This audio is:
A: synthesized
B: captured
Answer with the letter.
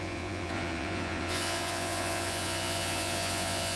A